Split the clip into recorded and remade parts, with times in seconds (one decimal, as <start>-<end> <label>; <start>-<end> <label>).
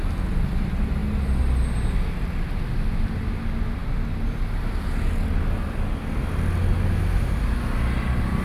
0.0-8.4 recorded